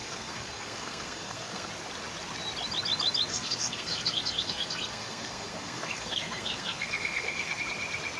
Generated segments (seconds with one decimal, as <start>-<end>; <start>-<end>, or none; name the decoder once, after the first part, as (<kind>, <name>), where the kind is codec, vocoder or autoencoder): 0.0-1.7 (codec, SNAC); 3.3-7.6